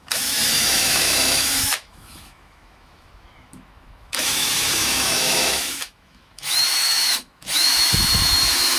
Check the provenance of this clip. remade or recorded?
remade